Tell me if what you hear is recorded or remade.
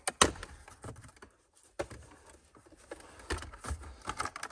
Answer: recorded